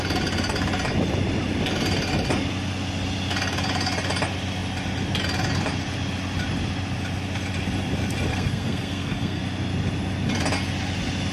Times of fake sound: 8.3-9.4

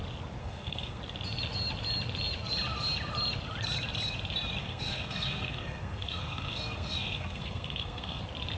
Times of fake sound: 0.4-1.0; 4.6-8.2

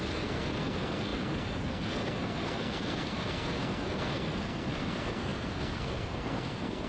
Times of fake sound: 0.0-6.9

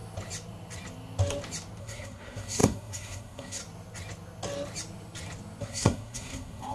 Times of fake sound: 1.8-3.6; 5.6-6.7

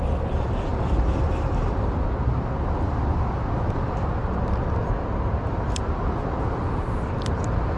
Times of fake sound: none

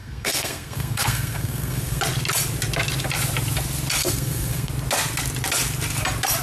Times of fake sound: 0.0-2.0; 4.0-4.7